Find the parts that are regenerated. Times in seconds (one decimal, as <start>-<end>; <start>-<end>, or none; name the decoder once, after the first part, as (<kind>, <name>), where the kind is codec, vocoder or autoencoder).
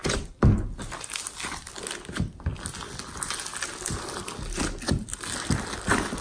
1.2-2.5 (vocoder, BigVGAN v2); 4.9-6.2